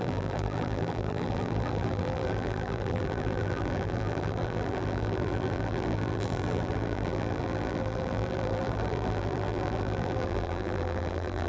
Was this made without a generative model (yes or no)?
no